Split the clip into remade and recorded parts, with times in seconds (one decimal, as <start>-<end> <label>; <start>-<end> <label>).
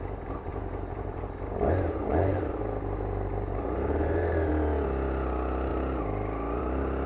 0.0-0.5 recorded; 0.5-1.2 remade; 1.2-2.1 recorded; 2.1-4.5 remade; 4.5-7.1 recorded